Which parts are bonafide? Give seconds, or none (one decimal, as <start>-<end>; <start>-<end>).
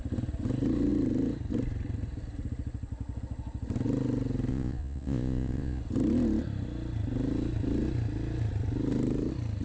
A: 0.0-4.5; 5.8-9.6